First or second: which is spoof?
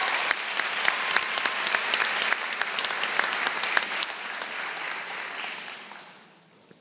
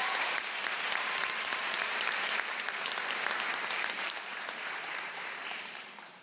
second